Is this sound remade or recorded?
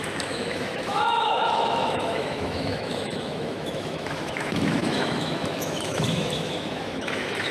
remade